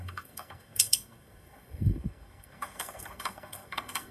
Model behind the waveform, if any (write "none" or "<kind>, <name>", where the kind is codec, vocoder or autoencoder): codec, SNAC